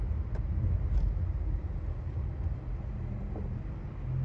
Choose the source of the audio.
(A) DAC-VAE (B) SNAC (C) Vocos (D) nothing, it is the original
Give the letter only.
D